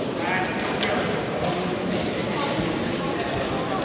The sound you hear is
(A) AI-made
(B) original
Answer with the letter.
B